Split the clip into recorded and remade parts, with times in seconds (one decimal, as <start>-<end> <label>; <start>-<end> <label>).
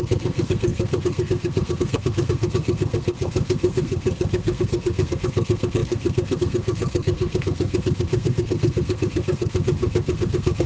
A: 0.0-10.7 remade